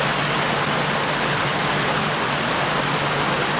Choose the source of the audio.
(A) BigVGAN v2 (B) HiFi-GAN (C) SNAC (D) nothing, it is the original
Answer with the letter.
D